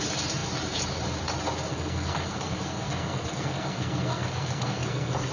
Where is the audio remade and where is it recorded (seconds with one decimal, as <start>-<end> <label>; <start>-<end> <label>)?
0.0-1.7 recorded; 1.7-5.3 remade